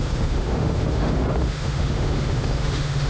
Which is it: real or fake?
fake